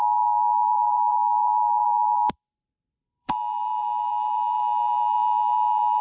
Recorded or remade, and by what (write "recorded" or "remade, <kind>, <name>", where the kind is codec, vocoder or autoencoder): remade, vocoder, BigVGAN v2